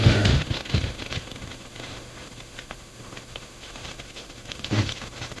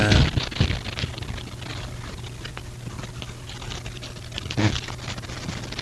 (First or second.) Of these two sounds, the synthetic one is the first